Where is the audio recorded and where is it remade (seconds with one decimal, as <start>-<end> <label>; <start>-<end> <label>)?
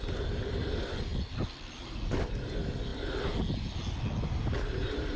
0.0-5.2 recorded